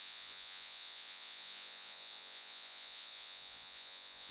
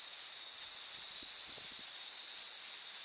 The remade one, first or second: first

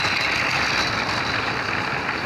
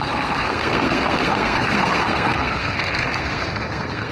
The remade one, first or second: second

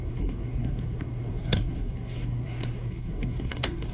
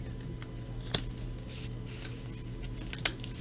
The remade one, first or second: first